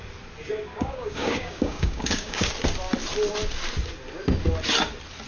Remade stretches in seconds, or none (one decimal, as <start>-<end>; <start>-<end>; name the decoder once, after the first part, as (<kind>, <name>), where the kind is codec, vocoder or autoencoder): 0.7-2.5 (codec, DAC)